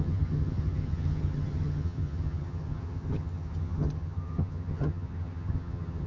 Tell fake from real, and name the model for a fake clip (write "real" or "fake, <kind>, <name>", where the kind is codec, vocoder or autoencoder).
fake, vocoder, HiFi-GAN